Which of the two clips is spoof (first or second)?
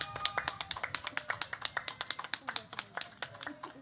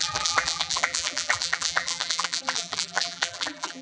second